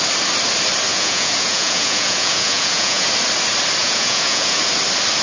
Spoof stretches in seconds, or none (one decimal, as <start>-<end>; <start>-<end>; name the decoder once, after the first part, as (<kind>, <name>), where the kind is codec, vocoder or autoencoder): 0.9-3.1 (vocoder, Vocos); 3.8-4.6